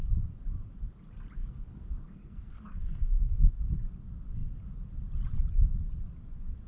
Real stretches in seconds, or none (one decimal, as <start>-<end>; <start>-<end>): 0.0-1.4; 3.6-6.7